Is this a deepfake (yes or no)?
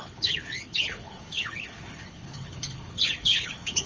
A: yes